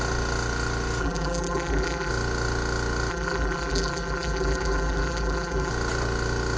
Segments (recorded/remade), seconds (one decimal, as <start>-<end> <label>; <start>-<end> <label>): 0.0-1.0 recorded; 1.0-2.1 remade; 2.1-3.1 recorded; 3.1-5.7 remade; 5.7-6.6 recorded